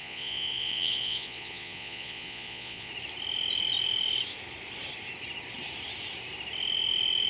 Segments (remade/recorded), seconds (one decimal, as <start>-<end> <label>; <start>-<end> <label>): 0.0-2.9 remade; 2.9-7.3 recorded